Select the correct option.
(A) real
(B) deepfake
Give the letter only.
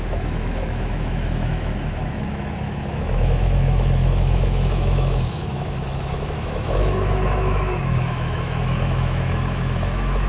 B